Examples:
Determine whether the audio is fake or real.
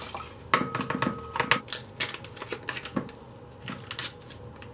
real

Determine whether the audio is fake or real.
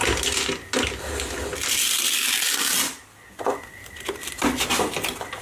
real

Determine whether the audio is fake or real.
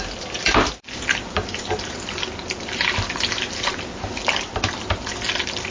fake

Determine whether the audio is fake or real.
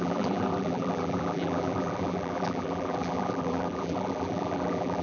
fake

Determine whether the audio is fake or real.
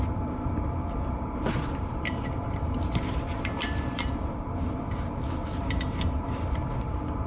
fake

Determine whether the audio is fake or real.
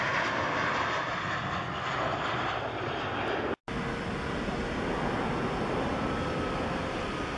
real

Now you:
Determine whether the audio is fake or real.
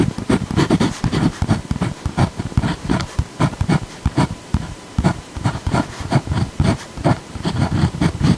fake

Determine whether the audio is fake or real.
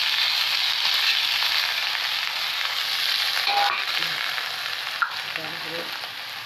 real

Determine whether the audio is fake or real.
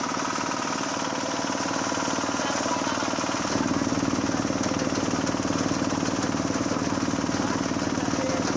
real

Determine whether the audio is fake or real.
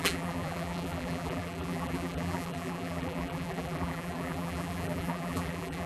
fake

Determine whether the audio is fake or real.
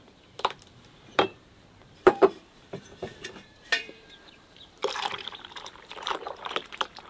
fake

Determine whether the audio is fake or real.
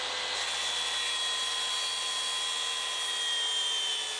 real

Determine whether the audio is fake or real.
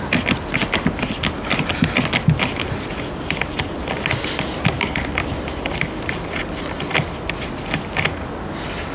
real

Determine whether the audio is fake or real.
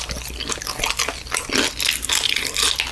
real